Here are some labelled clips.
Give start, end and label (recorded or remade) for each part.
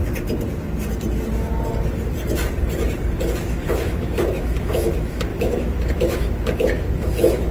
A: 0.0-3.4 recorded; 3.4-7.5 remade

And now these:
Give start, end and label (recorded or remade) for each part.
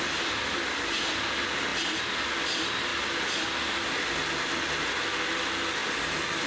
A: 0.0-6.5 recorded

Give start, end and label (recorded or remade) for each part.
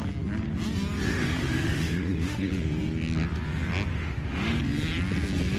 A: 0.0-1.1 recorded; 1.1-2.5 remade; 2.5-3.9 recorded; 3.9-4.6 remade; 4.6-5.6 recorded